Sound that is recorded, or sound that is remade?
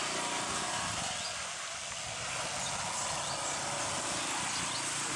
recorded